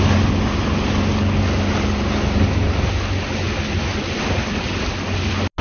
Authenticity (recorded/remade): recorded